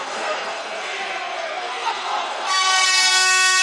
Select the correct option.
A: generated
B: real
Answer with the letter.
A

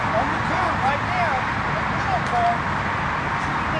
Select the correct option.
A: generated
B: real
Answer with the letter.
B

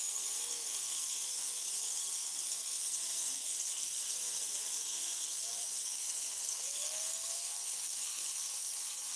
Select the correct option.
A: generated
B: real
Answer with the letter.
A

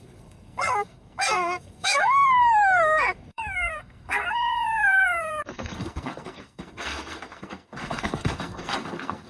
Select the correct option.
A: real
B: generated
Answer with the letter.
B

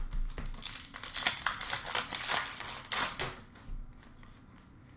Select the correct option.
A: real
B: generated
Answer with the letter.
A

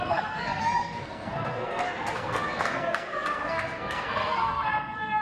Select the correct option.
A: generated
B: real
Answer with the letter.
A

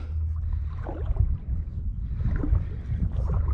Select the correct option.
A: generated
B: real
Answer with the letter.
B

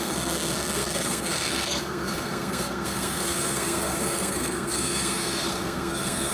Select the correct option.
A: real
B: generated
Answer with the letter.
B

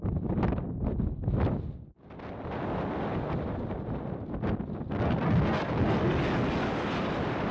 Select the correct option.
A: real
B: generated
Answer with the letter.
A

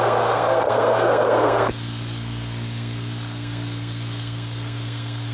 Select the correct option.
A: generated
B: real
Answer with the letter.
A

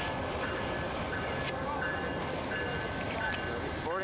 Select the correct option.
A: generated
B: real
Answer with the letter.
B